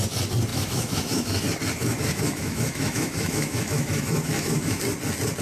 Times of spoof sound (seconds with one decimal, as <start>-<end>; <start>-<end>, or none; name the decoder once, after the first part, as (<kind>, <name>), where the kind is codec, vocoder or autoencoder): 0.5-1.4 (autoencoder, DAC-VAE); 1.8-4.8